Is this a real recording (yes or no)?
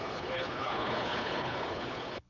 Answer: no